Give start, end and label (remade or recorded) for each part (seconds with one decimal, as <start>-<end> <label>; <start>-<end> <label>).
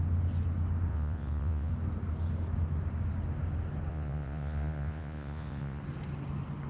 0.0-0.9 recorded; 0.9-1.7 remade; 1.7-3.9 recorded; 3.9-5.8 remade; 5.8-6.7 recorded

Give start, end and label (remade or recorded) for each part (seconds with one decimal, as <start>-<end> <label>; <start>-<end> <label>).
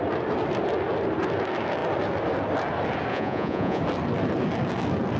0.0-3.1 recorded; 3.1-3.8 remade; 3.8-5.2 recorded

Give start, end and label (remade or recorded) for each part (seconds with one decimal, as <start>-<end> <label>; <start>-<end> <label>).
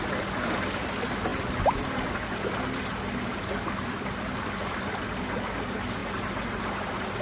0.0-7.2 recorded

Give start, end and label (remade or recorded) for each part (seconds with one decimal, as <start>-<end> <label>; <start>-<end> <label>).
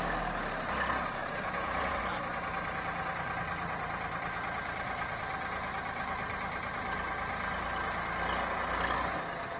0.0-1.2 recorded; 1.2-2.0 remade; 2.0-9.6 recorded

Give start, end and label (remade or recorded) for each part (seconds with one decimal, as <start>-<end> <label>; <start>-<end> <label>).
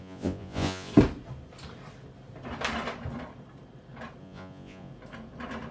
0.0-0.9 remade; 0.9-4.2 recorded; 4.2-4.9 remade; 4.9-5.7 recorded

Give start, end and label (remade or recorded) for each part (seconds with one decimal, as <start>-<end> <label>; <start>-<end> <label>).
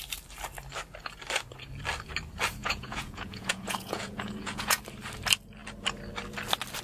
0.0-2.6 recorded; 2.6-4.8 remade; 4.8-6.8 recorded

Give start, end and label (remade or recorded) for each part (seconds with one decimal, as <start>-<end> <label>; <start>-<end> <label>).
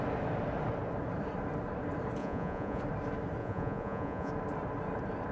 0.0-2.2 recorded; 2.2-2.8 remade; 2.8-3.4 recorded; 3.4-4.3 remade; 4.3-5.3 recorded